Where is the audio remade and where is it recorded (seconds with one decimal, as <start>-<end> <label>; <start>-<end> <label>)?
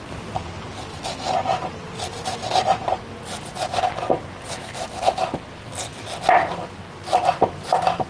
0.0-8.1 recorded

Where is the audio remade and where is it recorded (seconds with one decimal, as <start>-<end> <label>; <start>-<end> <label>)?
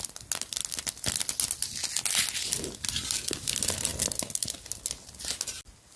0.0-6.0 recorded